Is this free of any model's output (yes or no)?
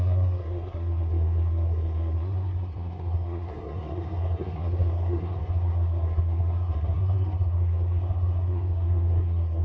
no